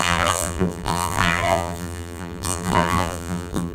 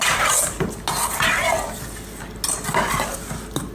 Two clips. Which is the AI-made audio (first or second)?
first